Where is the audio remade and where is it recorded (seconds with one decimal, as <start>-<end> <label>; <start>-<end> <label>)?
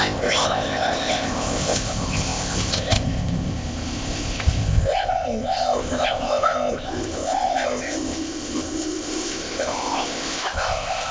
0.0-11.1 remade